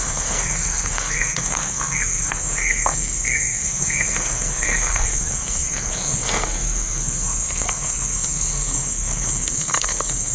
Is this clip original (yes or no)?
no